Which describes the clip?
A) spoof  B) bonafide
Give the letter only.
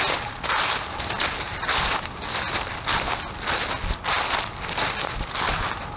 B